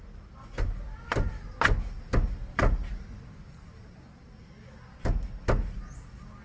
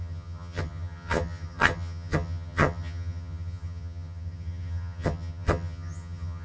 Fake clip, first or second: second